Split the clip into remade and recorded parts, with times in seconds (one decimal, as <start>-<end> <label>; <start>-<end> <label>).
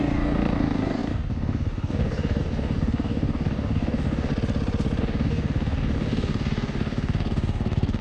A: 0.0-4.3 remade; 4.3-5.0 recorded; 5.0-8.0 remade